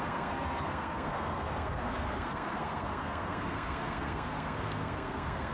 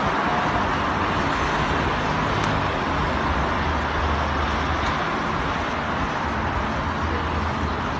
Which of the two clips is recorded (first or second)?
second